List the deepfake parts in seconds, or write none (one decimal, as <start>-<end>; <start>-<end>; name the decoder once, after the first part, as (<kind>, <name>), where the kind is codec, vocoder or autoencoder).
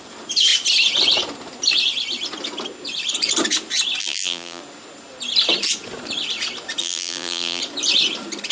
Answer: 4.0-4.6 (vocoder, BigVGAN v2); 6.8-7.6